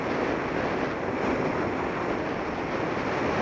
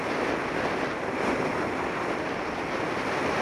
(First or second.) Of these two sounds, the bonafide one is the first